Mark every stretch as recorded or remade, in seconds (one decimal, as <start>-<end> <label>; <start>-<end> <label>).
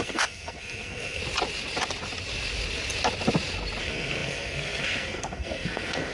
0.0-1.2 remade; 1.2-3.8 recorded; 3.8-6.1 remade